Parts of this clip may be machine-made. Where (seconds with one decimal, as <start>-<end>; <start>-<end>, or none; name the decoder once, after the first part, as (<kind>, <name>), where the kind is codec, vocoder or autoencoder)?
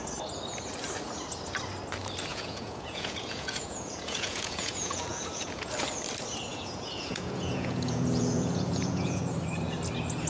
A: 2.3-5.7 (vocoder, Vocos); 6.5-9.2